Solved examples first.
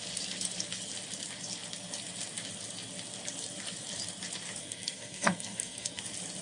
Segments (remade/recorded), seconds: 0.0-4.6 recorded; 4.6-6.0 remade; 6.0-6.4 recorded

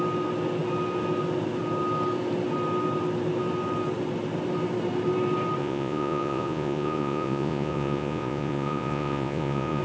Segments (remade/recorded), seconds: 0.0-5.6 recorded; 5.6-9.8 remade

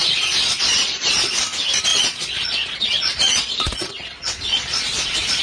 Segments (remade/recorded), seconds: 0.0-1.4 remade; 1.4-1.9 recorded; 1.9-5.4 remade